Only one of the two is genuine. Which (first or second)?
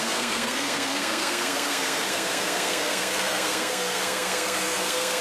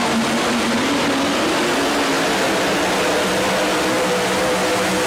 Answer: second